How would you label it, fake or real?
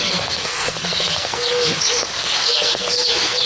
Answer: fake